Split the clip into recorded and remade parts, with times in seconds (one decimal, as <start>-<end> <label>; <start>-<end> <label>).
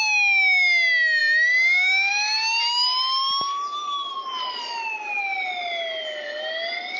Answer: 0.0-7.0 recorded